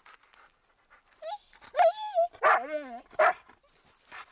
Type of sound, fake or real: real